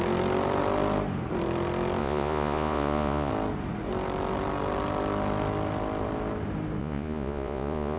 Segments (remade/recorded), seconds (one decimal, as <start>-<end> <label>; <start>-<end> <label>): 0.0-2.0 recorded; 2.0-3.3 remade; 3.3-6.8 recorded; 6.8-8.0 remade